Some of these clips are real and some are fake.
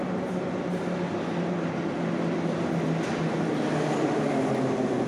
real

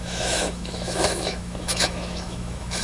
fake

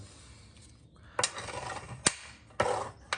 real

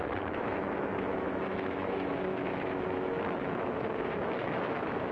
fake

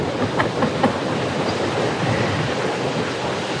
real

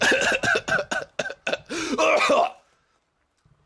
real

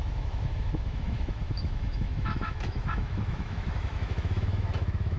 fake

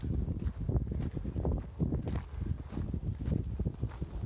real